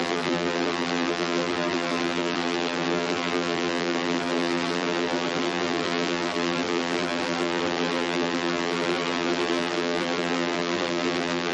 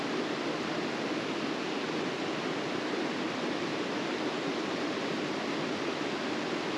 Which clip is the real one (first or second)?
second